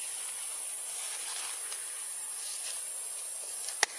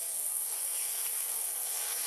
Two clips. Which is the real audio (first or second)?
first